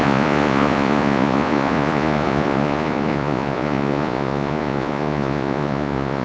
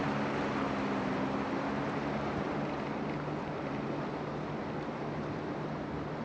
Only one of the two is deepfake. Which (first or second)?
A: first